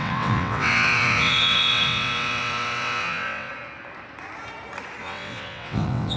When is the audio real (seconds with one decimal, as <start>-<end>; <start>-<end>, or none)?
3.5-5.0